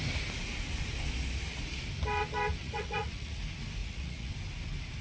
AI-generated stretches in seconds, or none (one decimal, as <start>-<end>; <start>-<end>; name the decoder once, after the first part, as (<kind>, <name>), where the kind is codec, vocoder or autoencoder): 2.6-3.4 (vocoder, Vocos); 3.8-4.3